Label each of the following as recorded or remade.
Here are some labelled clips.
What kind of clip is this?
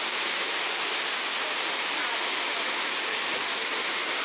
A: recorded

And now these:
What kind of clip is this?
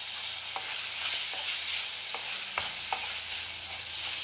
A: recorded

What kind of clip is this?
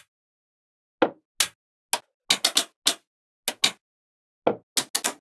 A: recorded